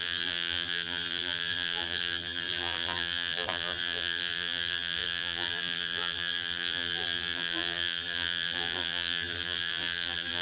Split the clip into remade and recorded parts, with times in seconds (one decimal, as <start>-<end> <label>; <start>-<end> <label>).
0.0-10.4 remade